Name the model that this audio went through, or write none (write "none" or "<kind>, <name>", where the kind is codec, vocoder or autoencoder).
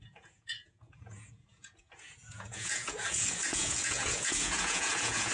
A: vocoder, Vocos